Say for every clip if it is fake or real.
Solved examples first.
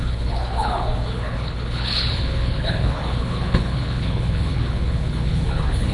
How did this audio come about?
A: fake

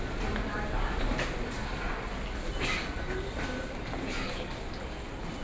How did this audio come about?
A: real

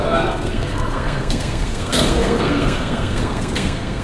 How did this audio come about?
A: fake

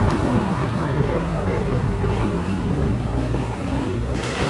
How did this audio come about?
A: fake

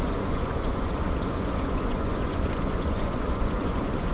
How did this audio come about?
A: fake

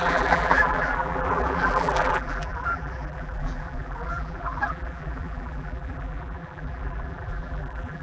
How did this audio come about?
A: fake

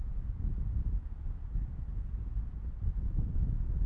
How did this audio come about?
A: fake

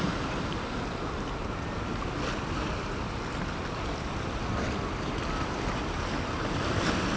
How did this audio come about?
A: real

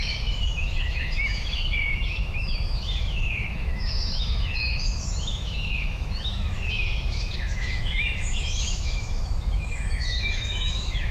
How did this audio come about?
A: fake